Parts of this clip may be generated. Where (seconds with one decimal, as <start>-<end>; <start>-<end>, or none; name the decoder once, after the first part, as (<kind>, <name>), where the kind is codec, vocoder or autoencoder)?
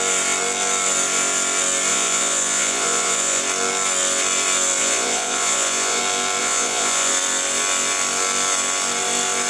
1.9-3.4 (vocoder, Vocos); 4.8-6.0; 6.4-7.1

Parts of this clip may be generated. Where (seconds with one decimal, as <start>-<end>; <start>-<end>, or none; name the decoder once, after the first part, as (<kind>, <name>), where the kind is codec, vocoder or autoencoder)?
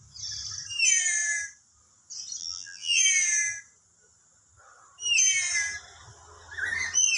2.4-3.0 (vocoder, BigVGAN v2)